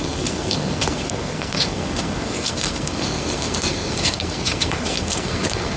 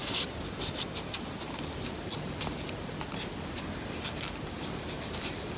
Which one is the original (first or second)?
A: second